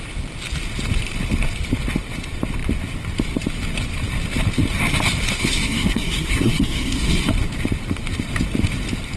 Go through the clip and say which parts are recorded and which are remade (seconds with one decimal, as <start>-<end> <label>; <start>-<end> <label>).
0.0-5.4 recorded; 5.4-7.3 remade; 7.3-9.2 recorded